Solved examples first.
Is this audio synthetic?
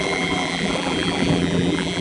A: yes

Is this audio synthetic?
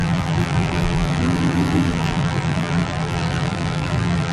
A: yes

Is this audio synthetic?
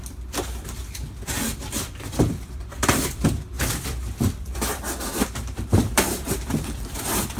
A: yes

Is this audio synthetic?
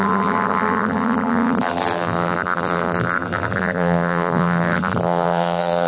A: yes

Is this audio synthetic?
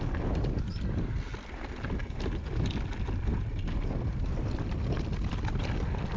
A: no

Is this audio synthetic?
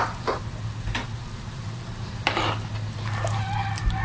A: yes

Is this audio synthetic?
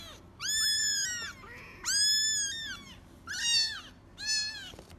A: no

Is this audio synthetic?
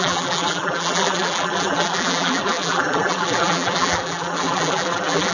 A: yes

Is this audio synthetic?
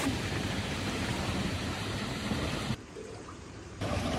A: yes